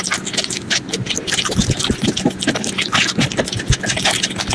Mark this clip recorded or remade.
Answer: recorded